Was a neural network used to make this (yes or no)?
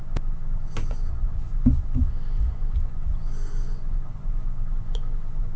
yes